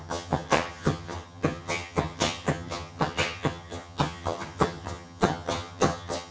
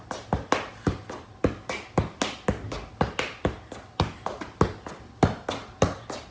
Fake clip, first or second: first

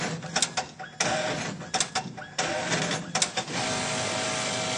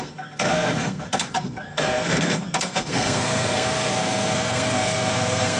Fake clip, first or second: second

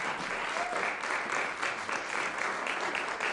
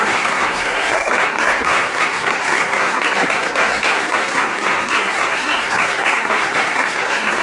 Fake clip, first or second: second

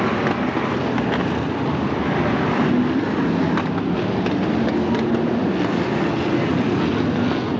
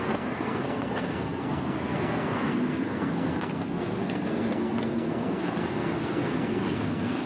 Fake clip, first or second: second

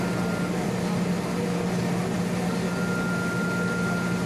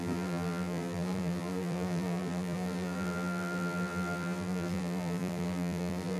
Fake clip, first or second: second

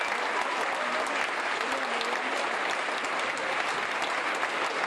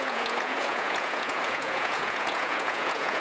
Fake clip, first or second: second